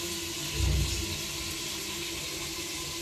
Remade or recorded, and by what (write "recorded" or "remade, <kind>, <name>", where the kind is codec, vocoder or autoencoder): recorded